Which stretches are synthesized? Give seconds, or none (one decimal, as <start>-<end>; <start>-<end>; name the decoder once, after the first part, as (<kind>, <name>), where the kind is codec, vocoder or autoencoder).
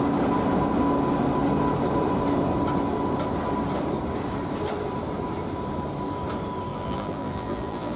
6.7-8.0 (vocoder, BigVGAN v2)